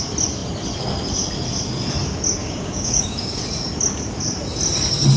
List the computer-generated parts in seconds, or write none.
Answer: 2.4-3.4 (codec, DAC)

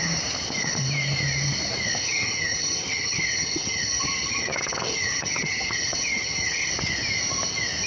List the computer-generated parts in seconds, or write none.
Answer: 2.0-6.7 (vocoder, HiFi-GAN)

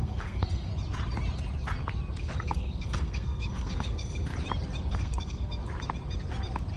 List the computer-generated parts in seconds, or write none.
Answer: 0.0-0.7 (codec, SNAC); 2.2-4.3; 4.9-5.6

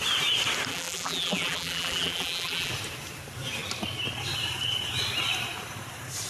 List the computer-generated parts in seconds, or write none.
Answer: 0.7-2.7 (vocoder, BigVGAN v2)

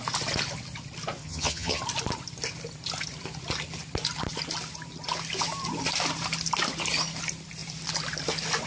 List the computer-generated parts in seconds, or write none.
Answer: 1.2-1.8 (vocoder, HiFi-GAN)

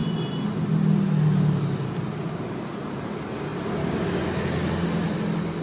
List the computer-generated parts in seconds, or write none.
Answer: none

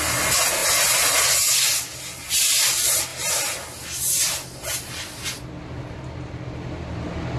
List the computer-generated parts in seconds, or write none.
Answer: none

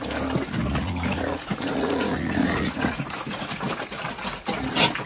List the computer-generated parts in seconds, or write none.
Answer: 0.6-3.7 (vocoder, Vocos)